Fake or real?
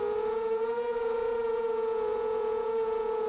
fake